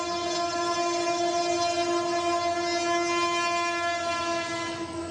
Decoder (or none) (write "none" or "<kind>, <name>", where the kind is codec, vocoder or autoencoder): none